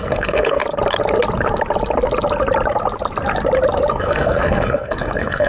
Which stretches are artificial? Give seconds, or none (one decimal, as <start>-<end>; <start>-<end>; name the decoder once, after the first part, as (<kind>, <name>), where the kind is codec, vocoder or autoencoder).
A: 0.0-0.6 (codec, SNAC); 3.9-5.5